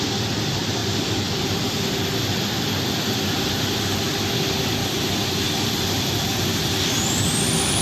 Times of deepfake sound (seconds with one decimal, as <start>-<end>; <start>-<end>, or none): 4.8-5.7; 6.5-7.3